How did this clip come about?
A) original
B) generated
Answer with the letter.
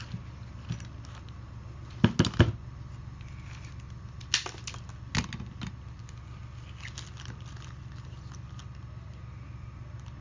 A